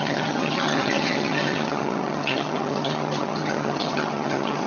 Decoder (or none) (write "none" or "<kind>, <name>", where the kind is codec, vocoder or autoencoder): vocoder, HiFi-GAN